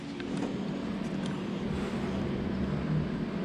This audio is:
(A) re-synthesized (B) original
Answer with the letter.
B